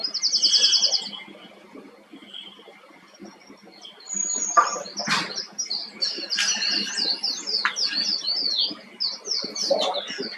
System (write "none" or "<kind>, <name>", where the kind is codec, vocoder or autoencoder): none